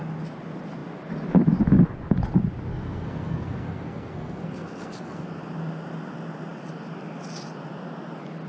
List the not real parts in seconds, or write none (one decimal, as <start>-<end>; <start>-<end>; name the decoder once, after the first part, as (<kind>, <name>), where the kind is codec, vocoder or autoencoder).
2.7-5.3 (codec, SNAC)